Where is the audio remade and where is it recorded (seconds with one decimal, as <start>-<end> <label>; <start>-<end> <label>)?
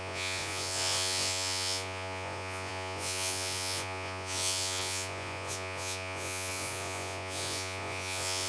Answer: 0.0-8.5 remade